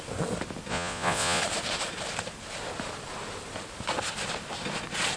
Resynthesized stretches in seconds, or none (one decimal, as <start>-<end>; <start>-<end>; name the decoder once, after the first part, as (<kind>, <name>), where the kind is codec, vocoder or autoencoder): 0.7-1.4 (vocoder, Vocos)